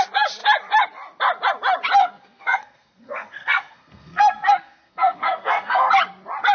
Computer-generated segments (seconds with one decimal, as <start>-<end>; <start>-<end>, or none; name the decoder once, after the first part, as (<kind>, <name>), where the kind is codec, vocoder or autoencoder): 2.0-5.9 (codec, SNAC)